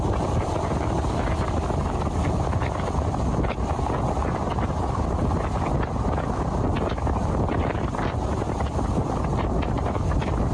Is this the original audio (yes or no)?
yes